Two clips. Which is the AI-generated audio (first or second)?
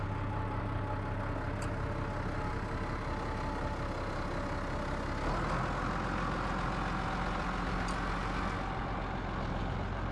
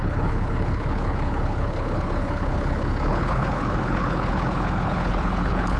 second